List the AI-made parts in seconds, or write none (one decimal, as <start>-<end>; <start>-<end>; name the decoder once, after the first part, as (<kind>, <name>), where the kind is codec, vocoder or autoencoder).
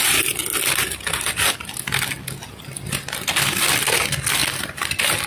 none